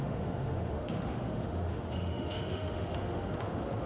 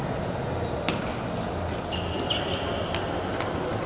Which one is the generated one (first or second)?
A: first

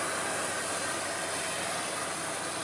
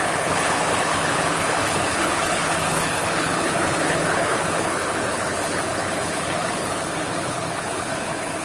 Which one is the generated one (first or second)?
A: second